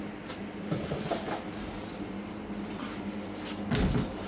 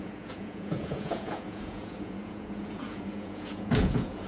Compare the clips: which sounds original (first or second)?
first